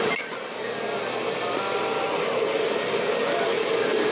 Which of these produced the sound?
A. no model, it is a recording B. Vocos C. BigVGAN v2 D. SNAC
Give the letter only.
A